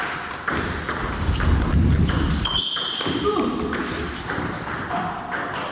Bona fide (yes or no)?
yes